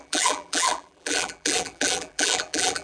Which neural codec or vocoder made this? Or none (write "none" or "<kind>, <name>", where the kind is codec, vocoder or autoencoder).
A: vocoder, BigVGAN v2